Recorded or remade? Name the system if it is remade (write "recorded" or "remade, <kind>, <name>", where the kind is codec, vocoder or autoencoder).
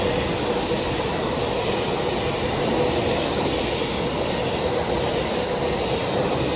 recorded